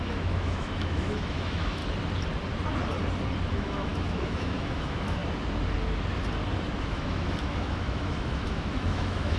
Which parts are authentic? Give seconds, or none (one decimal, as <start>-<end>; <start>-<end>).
1.8-3.5; 5.2-6.8